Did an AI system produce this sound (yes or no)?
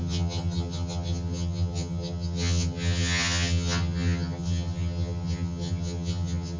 yes